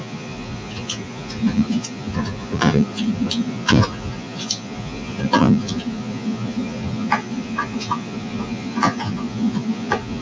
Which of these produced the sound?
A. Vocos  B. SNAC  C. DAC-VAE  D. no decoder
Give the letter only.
A